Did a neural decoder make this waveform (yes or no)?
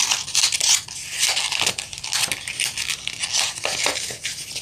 no